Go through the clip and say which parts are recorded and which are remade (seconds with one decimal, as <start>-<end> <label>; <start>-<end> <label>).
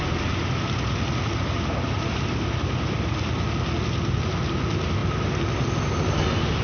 0.0-6.6 recorded